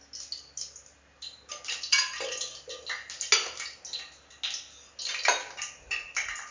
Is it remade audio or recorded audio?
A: recorded